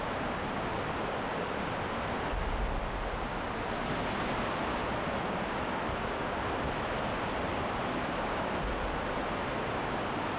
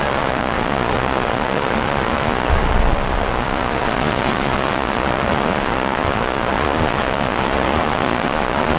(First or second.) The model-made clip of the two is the second